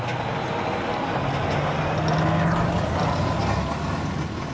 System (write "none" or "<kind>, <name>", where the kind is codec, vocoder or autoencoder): none